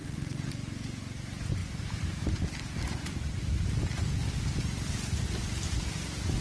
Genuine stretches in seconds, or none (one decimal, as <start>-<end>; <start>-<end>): 0.5-6.4